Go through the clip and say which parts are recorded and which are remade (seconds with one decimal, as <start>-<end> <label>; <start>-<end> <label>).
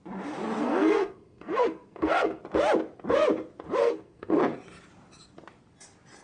0.0-0.6 recorded; 0.6-2.4 remade; 2.4-3.8 recorded; 3.8-4.4 remade; 4.4-6.2 recorded